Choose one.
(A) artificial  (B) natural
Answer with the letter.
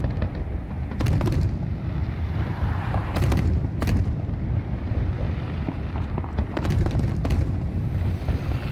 A